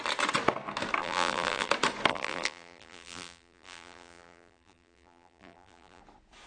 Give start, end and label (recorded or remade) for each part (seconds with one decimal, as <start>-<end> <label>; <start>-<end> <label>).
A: 0.0-1.0 recorded; 1.0-1.7 remade; 1.7-2.1 recorded; 2.1-6.0 remade; 6.0-6.5 recorded